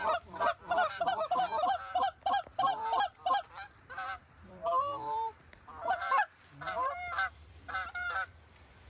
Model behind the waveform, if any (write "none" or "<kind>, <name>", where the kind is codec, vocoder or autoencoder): vocoder, BigVGAN v2